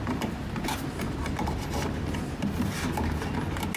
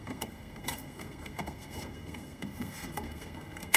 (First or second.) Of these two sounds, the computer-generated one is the second